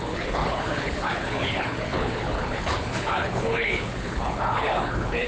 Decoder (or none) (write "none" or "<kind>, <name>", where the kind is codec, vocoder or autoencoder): codec, HILCodec